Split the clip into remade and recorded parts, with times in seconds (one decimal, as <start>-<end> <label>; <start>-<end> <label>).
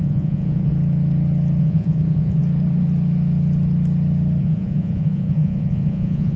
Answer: 0.0-0.7 remade; 0.7-1.6 recorded; 1.6-2.4 remade; 2.4-4.4 recorded; 4.4-6.4 remade